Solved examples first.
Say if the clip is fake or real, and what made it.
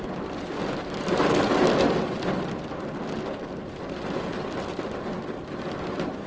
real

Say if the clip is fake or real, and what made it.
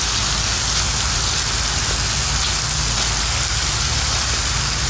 real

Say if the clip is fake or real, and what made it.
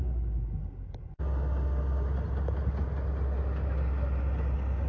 real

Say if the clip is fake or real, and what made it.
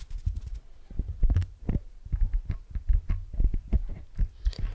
real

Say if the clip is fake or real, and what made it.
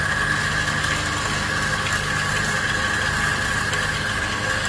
real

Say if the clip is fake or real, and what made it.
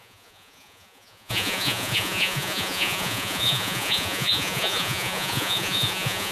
fake, vocoder, Vocos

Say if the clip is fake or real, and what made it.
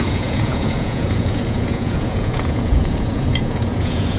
fake, vocoder, Vocos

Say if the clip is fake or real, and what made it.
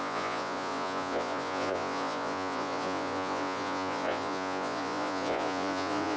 fake, vocoder, Vocos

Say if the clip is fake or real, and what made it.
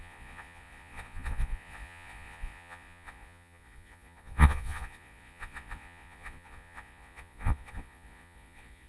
fake, vocoder, Vocos